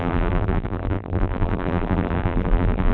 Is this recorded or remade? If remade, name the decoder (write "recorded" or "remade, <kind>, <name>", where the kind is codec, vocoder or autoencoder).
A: remade, vocoder, BigVGAN v2